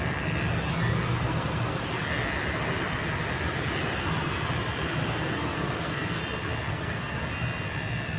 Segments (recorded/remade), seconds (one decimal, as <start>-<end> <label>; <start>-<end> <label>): 0.0-1.0 recorded; 1.0-1.8 remade; 1.8-5.0 recorded; 5.0-6.2 remade; 6.2-6.7 recorded; 6.7-7.2 remade; 7.2-8.2 recorded